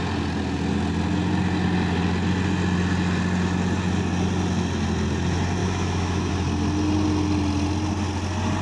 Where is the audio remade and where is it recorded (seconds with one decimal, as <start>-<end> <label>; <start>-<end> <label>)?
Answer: 0.0-5.6 recorded; 5.6-6.3 remade; 6.3-8.6 recorded

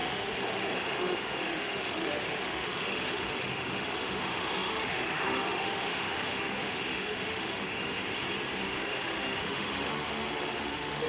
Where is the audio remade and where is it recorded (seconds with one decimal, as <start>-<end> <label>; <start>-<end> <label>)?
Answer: 0.0-8.0 remade; 8.0-8.6 recorded; 8.6-11.1 remade

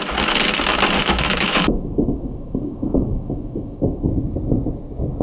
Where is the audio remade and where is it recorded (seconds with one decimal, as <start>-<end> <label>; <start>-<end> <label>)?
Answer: 0.0-1.0 recorded; 1.0-4.1 remade; 4.1-5.2 recorded

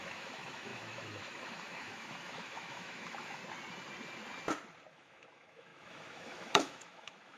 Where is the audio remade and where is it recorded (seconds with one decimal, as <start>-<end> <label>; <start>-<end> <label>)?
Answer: 0.0-3.4 remade; 3.4-4.9 recorded; 4.9-7.4 remade

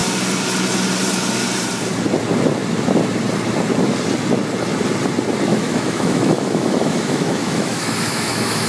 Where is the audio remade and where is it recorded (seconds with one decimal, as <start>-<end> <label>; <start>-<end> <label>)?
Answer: 0.0-5.5 recorded; 5.5-8.7 remade